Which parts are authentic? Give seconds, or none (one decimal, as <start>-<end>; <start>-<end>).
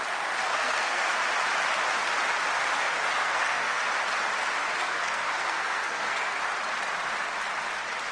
0.0-0.5; 1.2-3.2; 3.8-4.8; 6.4-8.1